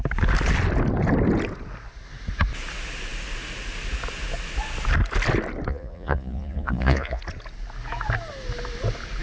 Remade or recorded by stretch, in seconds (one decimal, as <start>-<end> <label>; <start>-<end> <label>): 0.0-5.7 recorded; 5.7-7.2 remade; 7.2-9.2 recorded

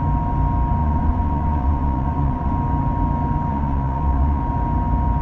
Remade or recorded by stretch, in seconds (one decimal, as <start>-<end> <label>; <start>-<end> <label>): 0.0-0.8 recorded; 0.8-2.5 remade; 2.5-3.5 recorded; 3.5-4.4 remade; 4.4-5.2 recorded